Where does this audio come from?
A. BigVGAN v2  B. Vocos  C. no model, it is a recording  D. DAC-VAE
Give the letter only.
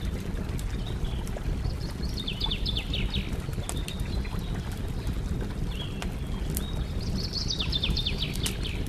C